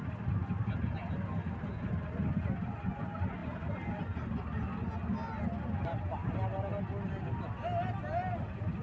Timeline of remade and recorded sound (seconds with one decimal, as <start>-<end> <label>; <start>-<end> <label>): 0.0-8.8 recorded